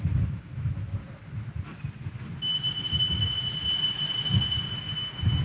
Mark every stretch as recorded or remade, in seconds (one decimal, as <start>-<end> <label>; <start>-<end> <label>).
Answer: 0.0-5.4 recorded